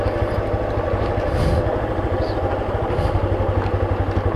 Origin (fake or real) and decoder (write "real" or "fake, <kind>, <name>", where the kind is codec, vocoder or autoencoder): real